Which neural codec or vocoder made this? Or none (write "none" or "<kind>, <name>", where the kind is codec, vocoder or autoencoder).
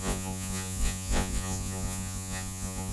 vocoder, Vocos